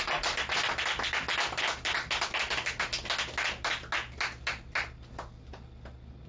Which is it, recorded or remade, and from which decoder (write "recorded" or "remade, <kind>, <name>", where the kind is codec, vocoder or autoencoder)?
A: recorded